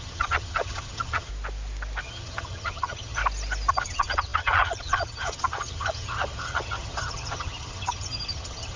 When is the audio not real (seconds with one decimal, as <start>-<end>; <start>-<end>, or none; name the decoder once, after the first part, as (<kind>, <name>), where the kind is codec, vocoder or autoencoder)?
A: 0.0-1.3 (vocoder, HiFi-GAN); 2.0-3.2; 3.7-8.8